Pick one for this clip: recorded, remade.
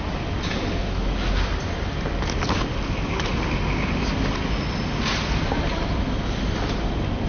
recorded